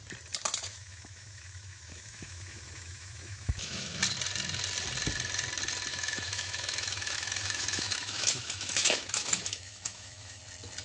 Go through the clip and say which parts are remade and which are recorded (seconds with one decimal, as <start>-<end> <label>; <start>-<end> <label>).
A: 0.0-0.7 recorded; 0.7-4.0 remade; 4.0-5.9 recorded; 5.9-10.4 remade; 10.4-10.8 recorded